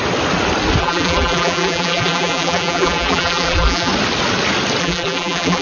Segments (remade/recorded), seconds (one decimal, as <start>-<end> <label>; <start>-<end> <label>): 0.0-0.8 recorded; 0.8-3.9 remade; 3.9-4.8 recorded; 4.8-5.6 remade